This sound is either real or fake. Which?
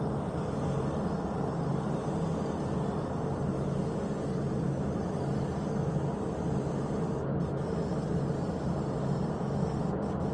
real